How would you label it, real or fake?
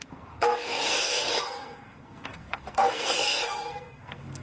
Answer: fake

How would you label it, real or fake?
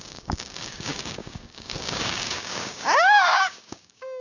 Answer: fake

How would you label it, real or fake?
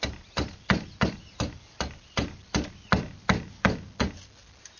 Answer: real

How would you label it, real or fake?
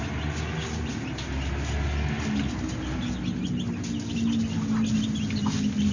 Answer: real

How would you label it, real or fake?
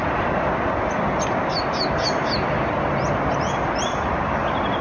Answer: real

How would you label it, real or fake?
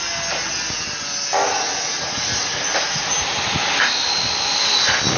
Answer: real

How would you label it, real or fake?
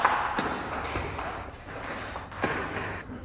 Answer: real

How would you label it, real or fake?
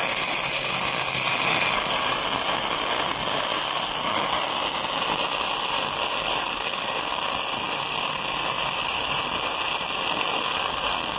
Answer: real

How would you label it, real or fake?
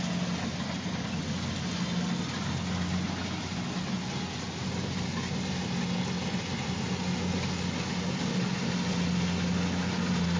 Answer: real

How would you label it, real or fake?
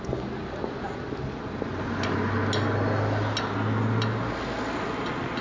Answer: real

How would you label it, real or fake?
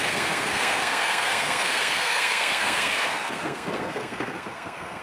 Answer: fake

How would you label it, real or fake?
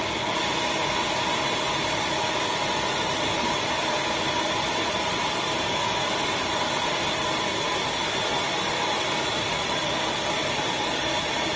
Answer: real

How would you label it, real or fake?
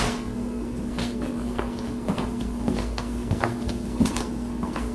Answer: fake